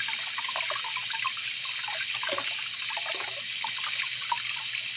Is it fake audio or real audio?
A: real